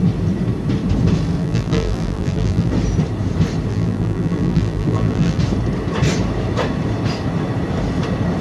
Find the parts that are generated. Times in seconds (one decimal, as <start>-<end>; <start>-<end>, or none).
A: 1.4-2.7; 3.7-5.4